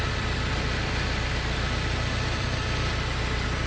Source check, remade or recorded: remade